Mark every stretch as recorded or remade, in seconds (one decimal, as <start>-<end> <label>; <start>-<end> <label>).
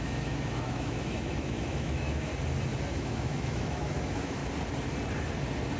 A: 0.0-2.3 remade; 2.3-2.9 recorded; 2.9-4.4 remade; 4.4-5.8 recorded